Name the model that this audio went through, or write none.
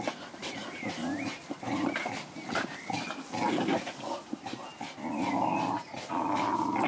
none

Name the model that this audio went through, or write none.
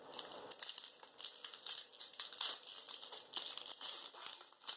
none